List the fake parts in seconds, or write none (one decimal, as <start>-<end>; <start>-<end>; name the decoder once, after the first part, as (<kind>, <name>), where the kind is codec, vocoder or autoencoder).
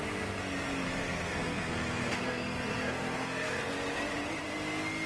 1.0-3.7 (codec, SNAC)